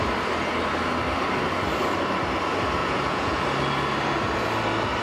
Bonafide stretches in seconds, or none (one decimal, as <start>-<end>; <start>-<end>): 0.0-2.8; 3.4-5.0